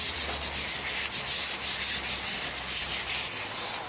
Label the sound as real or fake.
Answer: real